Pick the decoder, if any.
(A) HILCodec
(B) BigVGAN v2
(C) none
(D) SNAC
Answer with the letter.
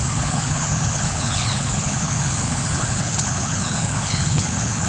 A